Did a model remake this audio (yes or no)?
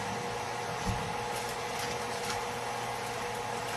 no